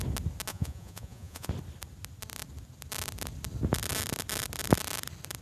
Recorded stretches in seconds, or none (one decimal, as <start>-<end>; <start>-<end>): 0.0-0.5; 1.5-5.4